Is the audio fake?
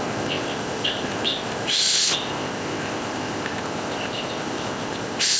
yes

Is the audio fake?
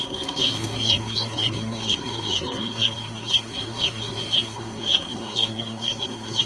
yes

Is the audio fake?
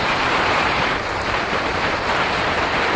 yes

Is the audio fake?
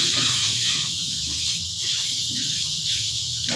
yes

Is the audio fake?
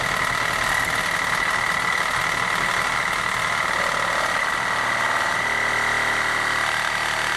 no